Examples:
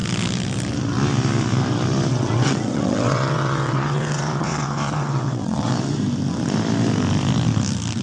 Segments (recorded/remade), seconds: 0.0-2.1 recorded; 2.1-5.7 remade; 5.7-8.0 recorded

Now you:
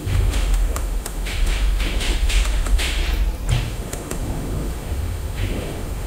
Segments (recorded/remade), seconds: 0.0-3.0 remade; 3.0-3.6 recorded; 3.6-6.1 remade

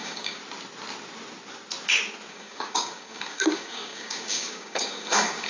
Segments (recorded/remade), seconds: 0.0-0.4 remade; 0.4-2.3 recorded; 2.3-5.5 remade

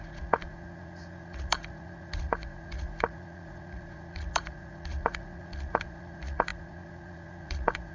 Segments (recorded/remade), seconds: 0.0-7.9 remade

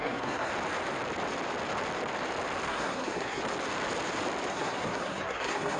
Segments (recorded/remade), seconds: 0.0-0.5 remade; 0.5-2.7 recorded; 2.7-3.4 remade; 3.4-4.5 recorded; 4.5-5.8 remade